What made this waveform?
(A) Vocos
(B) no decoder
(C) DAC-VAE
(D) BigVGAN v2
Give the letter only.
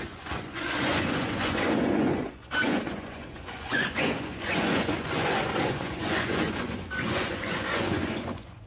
A